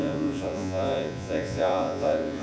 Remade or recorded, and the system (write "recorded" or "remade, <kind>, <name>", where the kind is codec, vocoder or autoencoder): remade, vocoder, Vocos